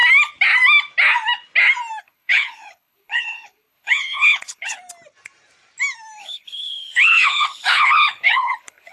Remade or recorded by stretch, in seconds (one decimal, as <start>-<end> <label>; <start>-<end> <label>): 0.0-2.0 recorded; 2.0-4.8 remade; 4.8-6.2 recorded; 6.2-8.9 remade